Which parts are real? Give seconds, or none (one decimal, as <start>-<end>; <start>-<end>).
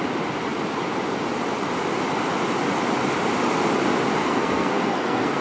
0.0-4.2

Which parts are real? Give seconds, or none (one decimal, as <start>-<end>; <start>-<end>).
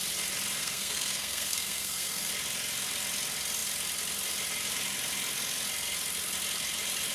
0.0-0.6; 2.3-7.1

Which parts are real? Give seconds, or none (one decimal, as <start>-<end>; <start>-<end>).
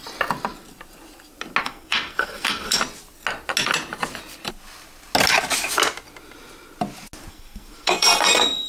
0.0-1.6; 2.8-7.3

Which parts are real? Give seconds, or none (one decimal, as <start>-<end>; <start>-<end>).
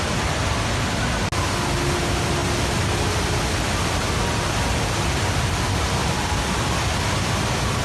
0.0-7.8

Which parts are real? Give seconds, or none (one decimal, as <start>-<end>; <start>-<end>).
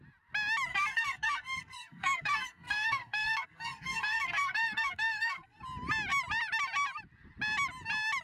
0.0-0.7; 5.6-8.2